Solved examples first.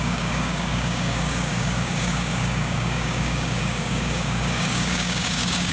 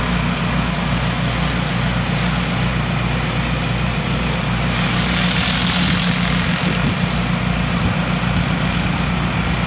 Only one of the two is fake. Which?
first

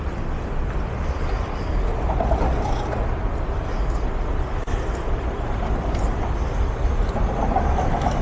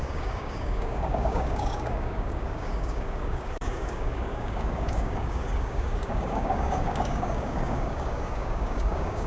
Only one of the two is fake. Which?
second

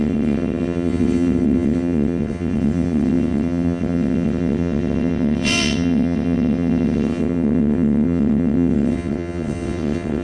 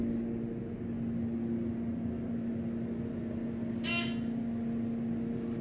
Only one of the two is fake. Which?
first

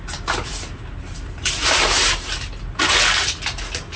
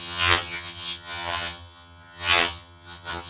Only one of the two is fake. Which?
second